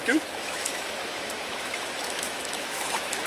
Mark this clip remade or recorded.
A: remade